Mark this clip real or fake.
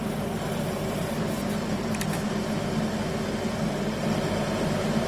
real